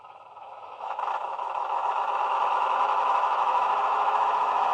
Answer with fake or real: fake